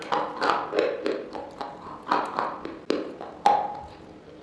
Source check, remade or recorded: recorded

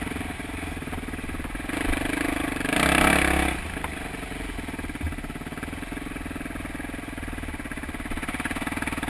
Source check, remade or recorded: recorded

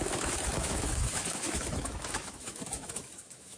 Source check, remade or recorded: remade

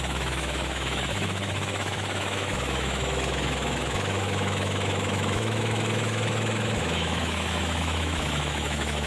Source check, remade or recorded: remade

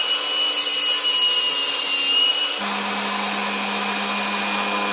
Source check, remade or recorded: recorded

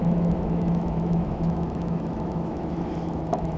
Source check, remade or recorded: remade